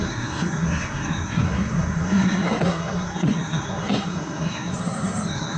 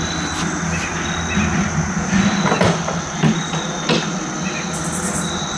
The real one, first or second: second